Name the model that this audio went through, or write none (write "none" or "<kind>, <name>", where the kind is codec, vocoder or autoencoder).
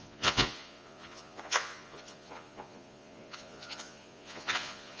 vocoder, Vocos